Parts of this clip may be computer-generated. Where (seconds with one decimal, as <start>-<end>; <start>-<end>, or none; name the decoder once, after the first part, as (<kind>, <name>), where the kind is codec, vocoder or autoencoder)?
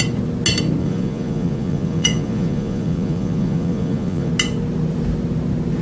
0.8-4.3 (vocoder, Vocos)